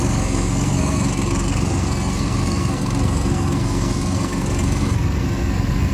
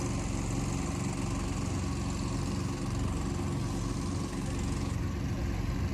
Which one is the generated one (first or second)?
first